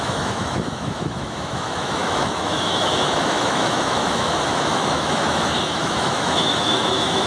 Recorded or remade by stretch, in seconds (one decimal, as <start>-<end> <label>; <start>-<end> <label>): 0.0-7.3 remade